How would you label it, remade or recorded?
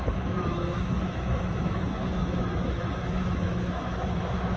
remade